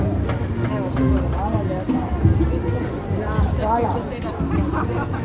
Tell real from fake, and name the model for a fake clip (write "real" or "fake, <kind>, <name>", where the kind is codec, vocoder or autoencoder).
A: real